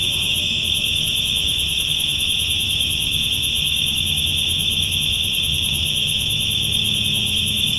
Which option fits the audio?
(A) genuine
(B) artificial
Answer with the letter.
B